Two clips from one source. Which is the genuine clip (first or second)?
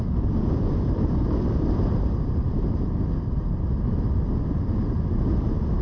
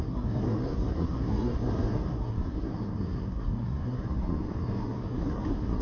first